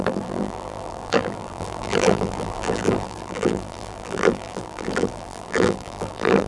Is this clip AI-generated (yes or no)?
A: yes